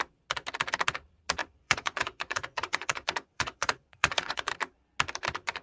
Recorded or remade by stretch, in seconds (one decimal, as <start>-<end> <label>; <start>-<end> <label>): 0.0-1.4 recorded; 1.4-4.5 remade; 4.5-5.6 recorded